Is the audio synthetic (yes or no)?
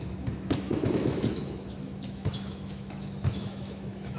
yes